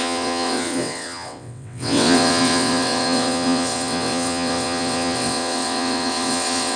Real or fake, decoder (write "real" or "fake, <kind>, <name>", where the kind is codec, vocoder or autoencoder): fake, vocoder, WaveNeXt